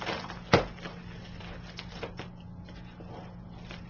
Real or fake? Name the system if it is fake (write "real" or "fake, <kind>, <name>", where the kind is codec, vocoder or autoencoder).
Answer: real